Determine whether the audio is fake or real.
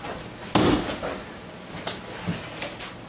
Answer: real